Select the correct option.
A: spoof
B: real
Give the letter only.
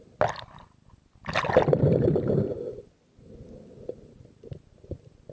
B